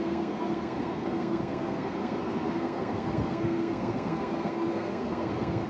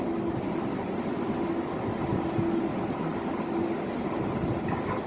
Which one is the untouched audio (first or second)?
second